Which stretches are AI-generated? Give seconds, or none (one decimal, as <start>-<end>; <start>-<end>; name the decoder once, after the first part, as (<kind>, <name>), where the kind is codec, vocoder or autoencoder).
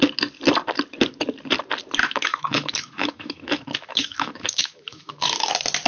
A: 2.0-5.5 (autoencoder, DAC-VAE)